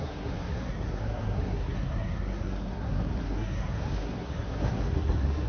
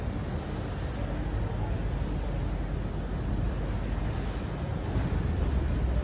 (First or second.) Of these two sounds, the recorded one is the second